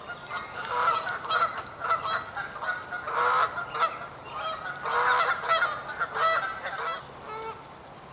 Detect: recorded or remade recorded